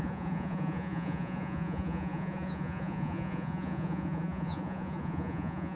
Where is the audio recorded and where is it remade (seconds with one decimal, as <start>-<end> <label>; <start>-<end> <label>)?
0.0-5.8 remade